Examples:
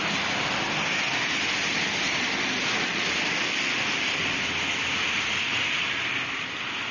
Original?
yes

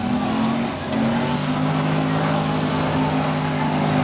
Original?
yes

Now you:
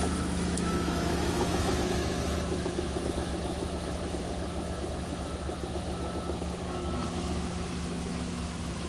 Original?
no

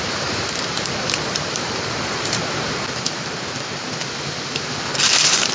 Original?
no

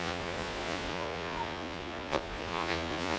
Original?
no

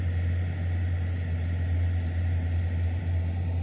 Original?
yes